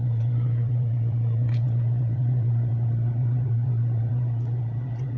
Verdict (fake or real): fake